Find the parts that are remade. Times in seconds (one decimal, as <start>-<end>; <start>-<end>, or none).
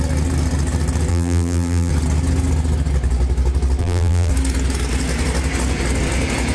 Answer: 1.1-1.9; 3.8-4.3